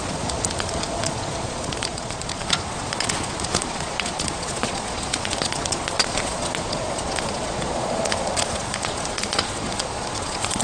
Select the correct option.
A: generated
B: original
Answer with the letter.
A